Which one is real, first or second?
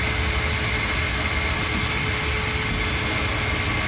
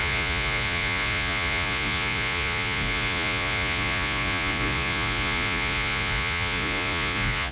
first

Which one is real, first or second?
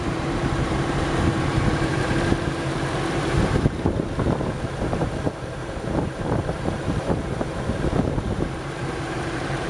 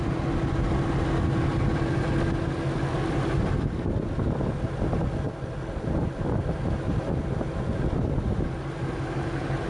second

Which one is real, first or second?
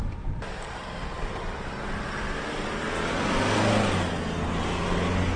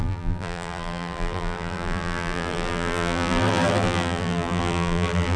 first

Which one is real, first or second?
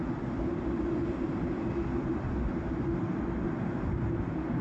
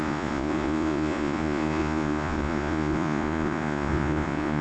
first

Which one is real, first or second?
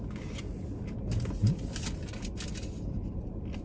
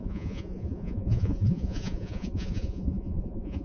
first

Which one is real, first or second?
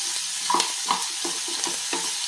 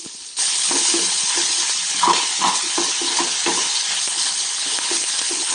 first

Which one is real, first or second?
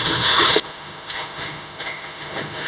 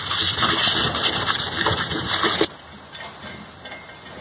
second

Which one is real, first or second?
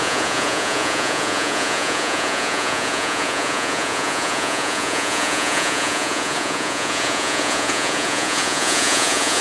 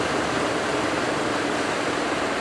second